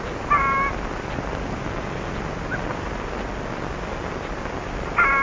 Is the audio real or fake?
real